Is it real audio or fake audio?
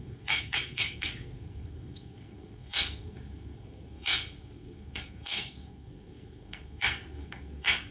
fake